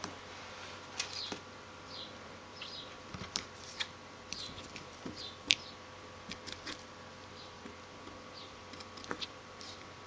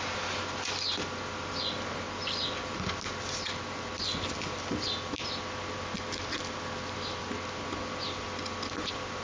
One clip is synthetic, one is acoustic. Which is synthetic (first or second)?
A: first